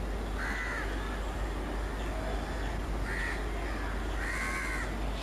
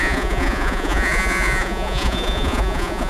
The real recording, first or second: first